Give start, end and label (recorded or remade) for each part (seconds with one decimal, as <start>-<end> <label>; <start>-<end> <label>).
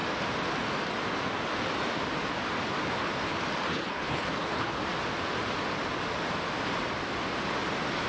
0.0-3.7 recorded; 3.7-4.8 remade; 4.8-8.1 recorded